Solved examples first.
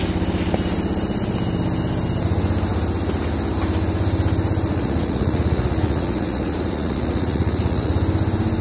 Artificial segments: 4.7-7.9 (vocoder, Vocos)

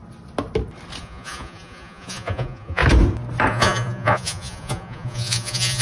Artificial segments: 1.0-2.8 (vocoder, Vocos); 3.5-5.8

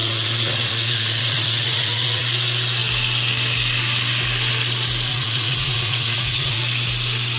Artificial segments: 0.0-2.2 (vocoder, Vocos); 5.1-6.6

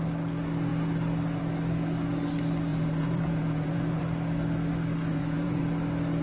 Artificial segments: 2.7-4.0 (vocoder, Vocos); 5.1-5.6